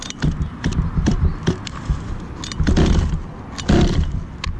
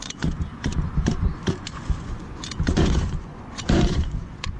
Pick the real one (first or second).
first